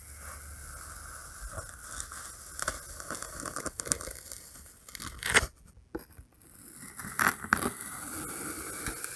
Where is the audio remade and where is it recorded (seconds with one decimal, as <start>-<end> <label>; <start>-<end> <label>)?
0.0-9.2 recorded